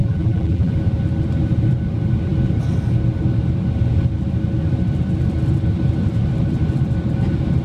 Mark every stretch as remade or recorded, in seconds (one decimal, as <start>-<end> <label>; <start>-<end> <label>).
0.0-0.7 remade; 0.7-7.6 recorded